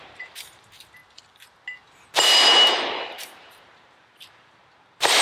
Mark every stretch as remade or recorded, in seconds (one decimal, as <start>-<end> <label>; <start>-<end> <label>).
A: 0.0-1.0 remade; 1.0-3.4 recorded; 3.4-5.2 remade

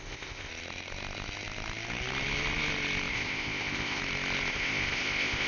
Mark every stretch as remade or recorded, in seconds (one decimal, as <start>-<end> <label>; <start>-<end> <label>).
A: 0.0-0.5 remade; 0.5-3.1 recorded; 3.1-4.0 remade; 4.0-4.5 recorded; 4.5-5.5 remade

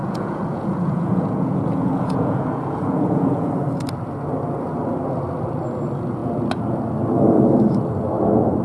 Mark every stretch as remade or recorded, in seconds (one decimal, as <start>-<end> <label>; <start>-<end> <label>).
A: 0.0-3.5 remade; 3.5-8.6 recorded

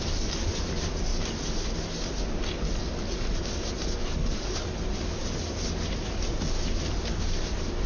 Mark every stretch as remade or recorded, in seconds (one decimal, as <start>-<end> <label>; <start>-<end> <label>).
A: 0.0-7.9 remade

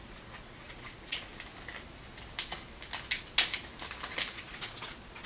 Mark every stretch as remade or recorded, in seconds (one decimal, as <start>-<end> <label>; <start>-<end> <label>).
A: 0.0-1.3 remade; 1.3-4.3 recorded; 4.3-5.3 remade

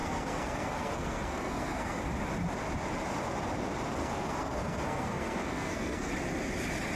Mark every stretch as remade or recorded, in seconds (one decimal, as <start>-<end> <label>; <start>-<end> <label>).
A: 0.0-2.0 remade; 2.0-4.0 recorded; 4.0-6.1 remade; 6.1-7.0 recorded